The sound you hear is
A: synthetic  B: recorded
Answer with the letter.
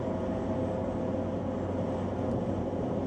B